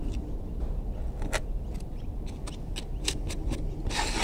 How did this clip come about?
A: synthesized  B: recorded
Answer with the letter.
B